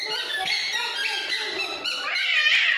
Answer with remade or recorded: recorded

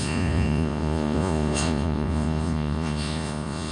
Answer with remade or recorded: remade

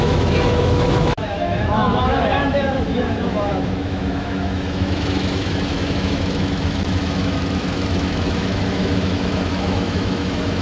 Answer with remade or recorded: remade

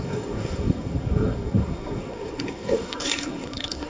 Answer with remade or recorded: remade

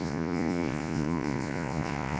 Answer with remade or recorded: remade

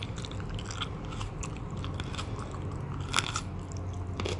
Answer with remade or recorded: recorded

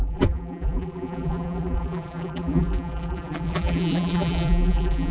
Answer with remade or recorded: remade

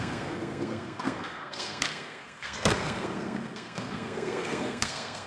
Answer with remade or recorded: remade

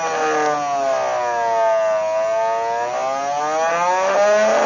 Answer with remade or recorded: recorded